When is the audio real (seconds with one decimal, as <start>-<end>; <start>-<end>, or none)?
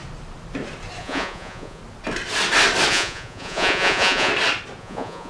0.0-1.0; 1.8-2.9; 4.3-4.8